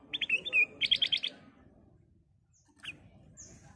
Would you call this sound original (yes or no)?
yes